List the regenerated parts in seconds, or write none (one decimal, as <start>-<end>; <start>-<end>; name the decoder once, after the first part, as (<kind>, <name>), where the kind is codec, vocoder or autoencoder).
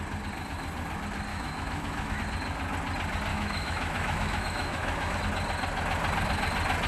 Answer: 1.3-2.2 (autoencoder, DAC-VAE); 3.3-5.2